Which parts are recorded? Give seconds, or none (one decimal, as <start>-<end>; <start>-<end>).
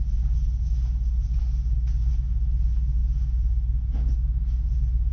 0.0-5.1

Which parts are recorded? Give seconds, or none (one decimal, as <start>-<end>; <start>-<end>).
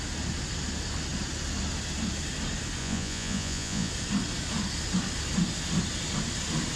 0.0-2.8; 3.9-6.8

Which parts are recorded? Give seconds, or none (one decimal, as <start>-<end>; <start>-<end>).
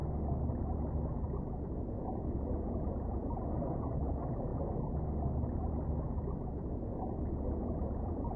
0.0-2.3; 4.5-7.6